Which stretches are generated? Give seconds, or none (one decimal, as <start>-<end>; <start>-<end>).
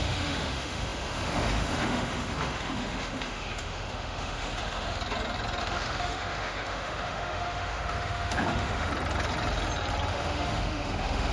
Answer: 0.0-5.0; 5.6-8.9; 10.1-11.3